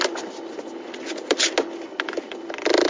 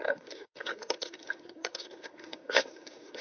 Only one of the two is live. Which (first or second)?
first